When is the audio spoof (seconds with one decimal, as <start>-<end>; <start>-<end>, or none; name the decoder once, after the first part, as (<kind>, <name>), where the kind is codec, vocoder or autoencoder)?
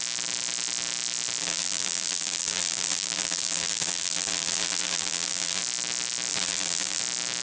1.4-5.6 (vocoder, BigVGAN v2); 6.3-7.0